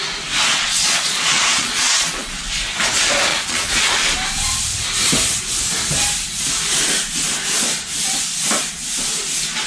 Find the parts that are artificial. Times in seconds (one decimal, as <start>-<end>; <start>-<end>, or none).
0.5-2.4; 3.3-4.0